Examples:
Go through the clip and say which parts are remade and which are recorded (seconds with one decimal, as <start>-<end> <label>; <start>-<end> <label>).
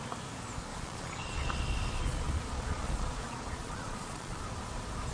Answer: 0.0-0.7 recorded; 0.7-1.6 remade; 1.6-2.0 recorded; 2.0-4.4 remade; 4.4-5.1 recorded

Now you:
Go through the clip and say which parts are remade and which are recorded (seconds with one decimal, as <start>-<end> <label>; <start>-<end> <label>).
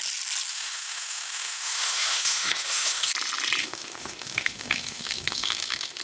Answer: 0.0-0.5 recorded; 0.5-3.1 remade; 3.1-3.6 recorded; 3.6-6.0 remade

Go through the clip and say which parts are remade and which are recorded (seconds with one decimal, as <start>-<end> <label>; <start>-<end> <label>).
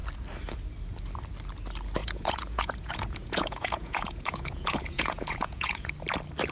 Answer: 0.0-2.0 recorded; 2.0-5.9 remade; 5.9-6.5 recorded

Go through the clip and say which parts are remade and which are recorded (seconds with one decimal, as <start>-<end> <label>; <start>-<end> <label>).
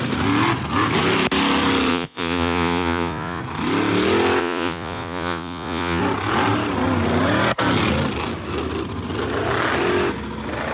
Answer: 0.0-1.9 recorded; 1.9-3.4 remade; 3.4-4.4 recorded; 4.4-6.0 remade; 6.0-10.7 recorded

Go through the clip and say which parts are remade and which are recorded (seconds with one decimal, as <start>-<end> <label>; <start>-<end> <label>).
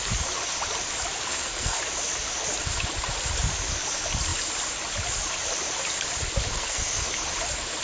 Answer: 0.0-1.3 recorded; 1.3-1.8 remade; 1.8-6.5 recorded; 6.5-7.1 remade; 7.1-7.8 recorded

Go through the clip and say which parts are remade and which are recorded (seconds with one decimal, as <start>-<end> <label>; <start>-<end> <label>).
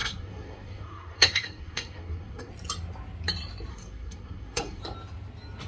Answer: 0.0-2.5 remade; 2.5-3.7 recorded; 3.7-4.8 remade; 4.8-5.7 recorded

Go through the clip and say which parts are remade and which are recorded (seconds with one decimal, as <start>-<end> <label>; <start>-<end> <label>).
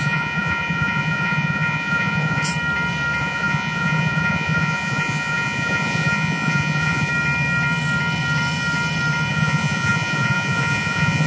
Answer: 0.0-2.5 remade; 2.5-3.2 recorded; 3.2-7.1 remade; 7.1-9.3 recorded; 9.3-11.3 remade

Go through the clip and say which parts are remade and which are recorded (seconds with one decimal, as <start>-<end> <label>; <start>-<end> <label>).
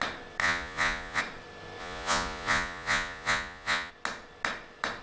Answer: 0.0-0.4 recorded; 0.4-1.2 remade; 1.2-1.8 recorded; 1.8-3.9 remade; 3.9-5.0 recorded